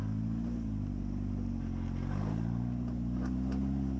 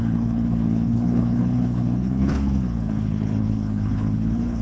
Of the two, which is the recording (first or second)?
first